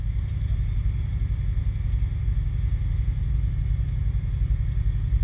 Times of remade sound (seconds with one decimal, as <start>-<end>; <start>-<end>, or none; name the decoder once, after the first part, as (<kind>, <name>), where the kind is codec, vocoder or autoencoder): none